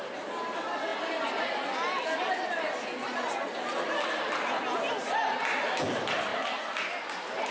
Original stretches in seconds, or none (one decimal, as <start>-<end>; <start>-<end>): 0.0-7.5